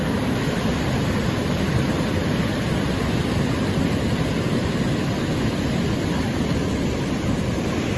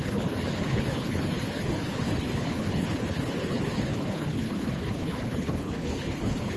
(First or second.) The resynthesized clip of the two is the second